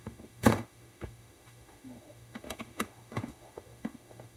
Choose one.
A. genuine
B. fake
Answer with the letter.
B